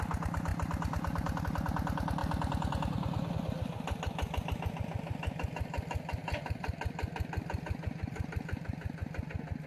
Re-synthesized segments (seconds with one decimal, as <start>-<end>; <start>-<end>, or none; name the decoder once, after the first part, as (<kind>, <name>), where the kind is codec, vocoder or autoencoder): 0.5-1.4 (vocoder, BigVGAN v2); 2.2-3.3; 6.2-6.8